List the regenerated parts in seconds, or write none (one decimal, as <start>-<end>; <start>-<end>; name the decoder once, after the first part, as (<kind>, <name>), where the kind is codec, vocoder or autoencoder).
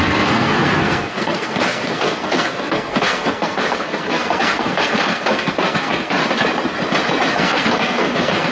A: 0.0-6.2 (codec, SNAC); 7.3-8.5